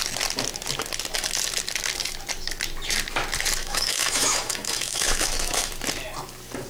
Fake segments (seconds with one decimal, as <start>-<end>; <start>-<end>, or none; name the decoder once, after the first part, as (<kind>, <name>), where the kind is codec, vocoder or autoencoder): 3.6-5.7 (autoencoder, DAC-VAE)